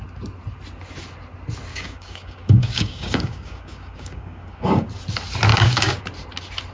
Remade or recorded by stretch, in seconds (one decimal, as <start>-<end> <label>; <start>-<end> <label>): 0.0-1.7 recorded; 1.7-4.9 remade; 4.9-5.5 recorded; 5.5-6.0 remade; 6.0-6.7 recorded

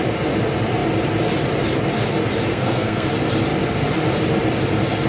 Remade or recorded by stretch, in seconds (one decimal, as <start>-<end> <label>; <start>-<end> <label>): 0.0-2.5 recorded; 2.5-3.1 remade; 3.1-5.1 recorded